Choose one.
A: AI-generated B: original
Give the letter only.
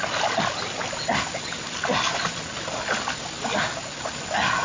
B